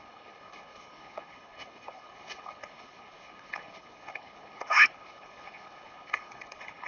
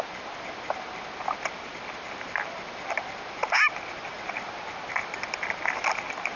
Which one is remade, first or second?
first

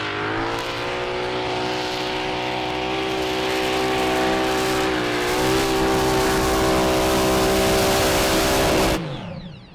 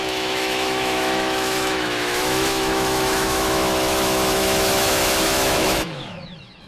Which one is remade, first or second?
second